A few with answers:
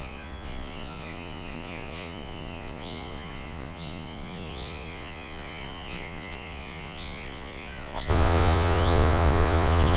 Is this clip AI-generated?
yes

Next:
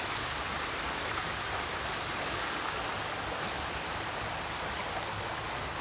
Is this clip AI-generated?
no